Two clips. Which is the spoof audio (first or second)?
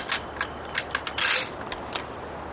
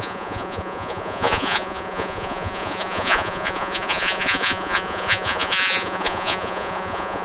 second